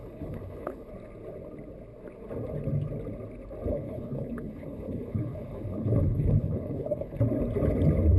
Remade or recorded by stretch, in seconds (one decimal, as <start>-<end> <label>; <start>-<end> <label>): 0.0-0.9 remade; 0.9-3.7 recorded; 3.7-7.2 remade; 7.2-8.2 recorded